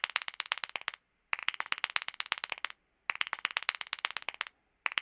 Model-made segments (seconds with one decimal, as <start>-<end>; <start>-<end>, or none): none